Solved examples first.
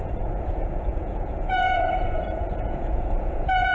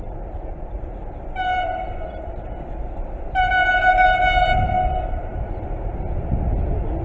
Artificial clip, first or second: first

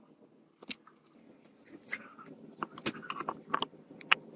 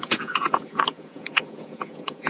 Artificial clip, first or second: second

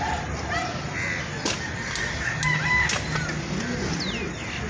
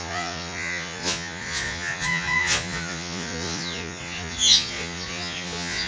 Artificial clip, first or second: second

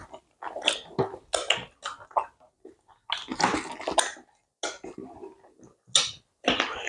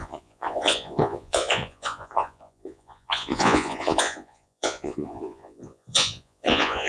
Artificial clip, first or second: second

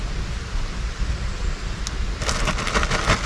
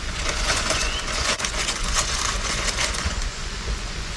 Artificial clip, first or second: second